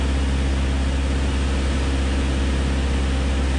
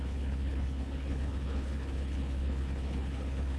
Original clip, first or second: first